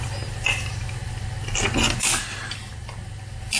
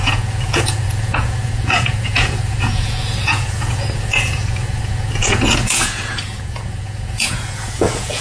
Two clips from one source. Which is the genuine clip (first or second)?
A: first